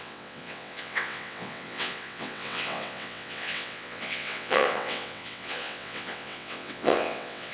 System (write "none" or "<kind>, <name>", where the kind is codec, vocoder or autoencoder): vocoder, WaveNeXt